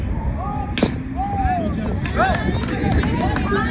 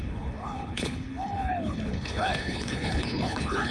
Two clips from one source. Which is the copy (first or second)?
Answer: second